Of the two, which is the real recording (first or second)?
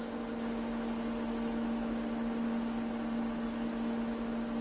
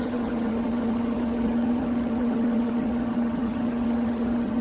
first